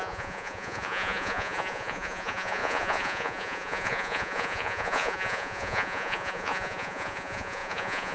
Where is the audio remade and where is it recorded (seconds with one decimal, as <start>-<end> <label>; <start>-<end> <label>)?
0.0-8.1 remade